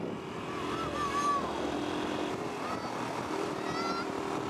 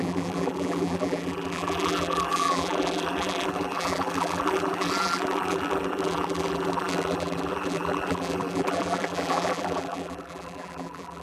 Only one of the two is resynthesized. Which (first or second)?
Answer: second